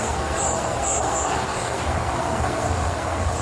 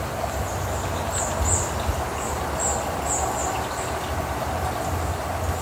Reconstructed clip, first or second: first